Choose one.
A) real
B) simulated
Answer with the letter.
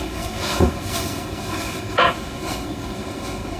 B